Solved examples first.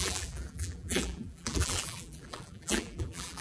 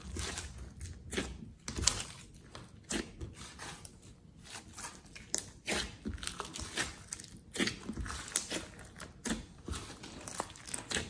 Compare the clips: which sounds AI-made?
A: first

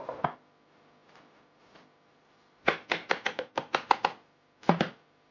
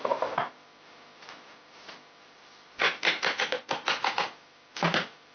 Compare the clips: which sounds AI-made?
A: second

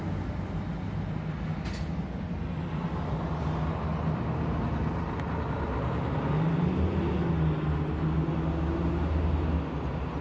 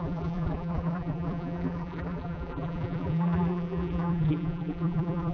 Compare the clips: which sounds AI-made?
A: second